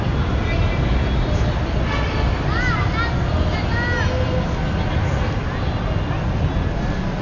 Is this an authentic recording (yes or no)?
yes